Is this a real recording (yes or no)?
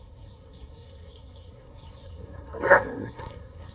no